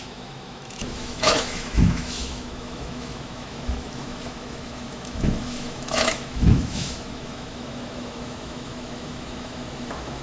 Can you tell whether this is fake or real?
fake